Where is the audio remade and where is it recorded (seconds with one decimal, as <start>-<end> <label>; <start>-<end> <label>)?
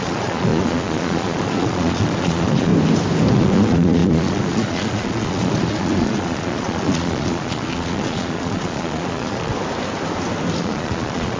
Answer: 0.0-2.7 remade; 2.7-3.3 recorded; 3.3-9.5 remade; 9.5-10.6 recorded; 10.6-11.4 remade